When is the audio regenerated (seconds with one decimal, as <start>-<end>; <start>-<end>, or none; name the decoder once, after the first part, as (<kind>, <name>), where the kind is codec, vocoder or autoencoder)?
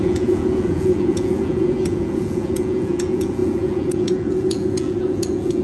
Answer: 0.0-5.6 (vocoder, Vocos)